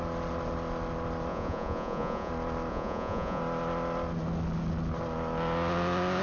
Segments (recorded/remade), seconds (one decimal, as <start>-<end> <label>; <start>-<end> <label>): 0.0-1.3 recorded; 1.3-2.3 remade; 2.3-2.7 recorded; 2.7-3.4 remade; 3.4-6.2 recorded